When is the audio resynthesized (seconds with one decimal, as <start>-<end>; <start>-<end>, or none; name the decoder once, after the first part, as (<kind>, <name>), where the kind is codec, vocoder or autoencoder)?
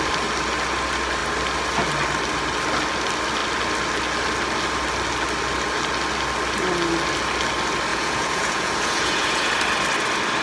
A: 7.9-9.5 (vocoder, Vocos)